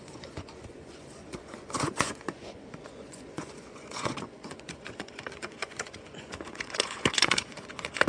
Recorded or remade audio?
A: remade